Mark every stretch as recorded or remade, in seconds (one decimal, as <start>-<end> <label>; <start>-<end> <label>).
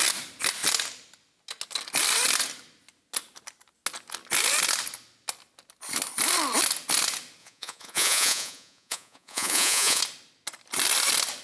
0.0-7.4 recorded; 7.4-10.0 remade; 10.0-11.4 recorded